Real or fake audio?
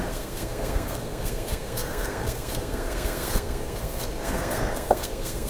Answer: fake